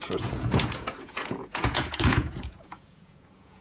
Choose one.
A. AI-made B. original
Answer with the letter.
A